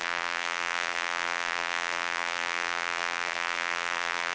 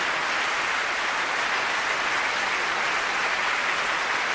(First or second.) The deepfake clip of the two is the first